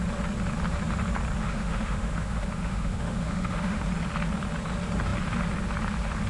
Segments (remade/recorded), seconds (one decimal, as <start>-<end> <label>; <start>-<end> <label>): 0.0-1.4 recorded; 1.4-3.8 remade; 3.8-6.3 recorded